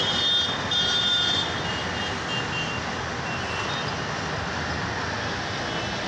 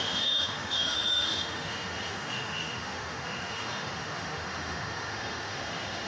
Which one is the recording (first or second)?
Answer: first